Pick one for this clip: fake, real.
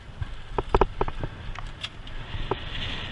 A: real